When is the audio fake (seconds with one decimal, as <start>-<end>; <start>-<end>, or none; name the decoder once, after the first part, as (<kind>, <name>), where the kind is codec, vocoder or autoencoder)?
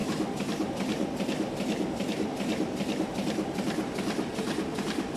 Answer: none